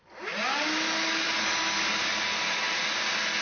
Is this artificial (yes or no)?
no